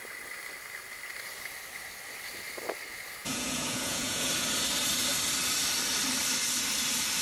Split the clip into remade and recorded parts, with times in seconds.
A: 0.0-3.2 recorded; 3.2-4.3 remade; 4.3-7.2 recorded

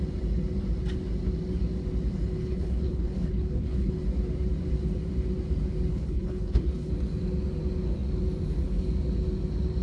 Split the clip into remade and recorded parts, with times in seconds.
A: 0.0-2.4 recorded; 2.4-3.9 remade; 3.9-5.9 recorded; 5.9-6.9 remade; 6.9-9.8 recorded

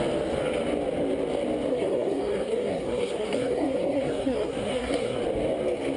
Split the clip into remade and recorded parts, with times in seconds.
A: 0.0-1.7 recorded; 1.7-5.2 remade; 5.2-6.0 recorded

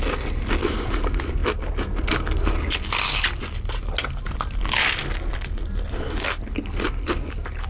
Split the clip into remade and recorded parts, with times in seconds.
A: 0.0-7.7 recorded